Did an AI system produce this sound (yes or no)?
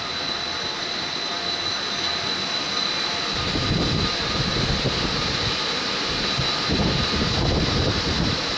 no